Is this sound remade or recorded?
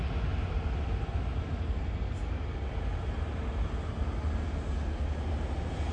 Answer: recorded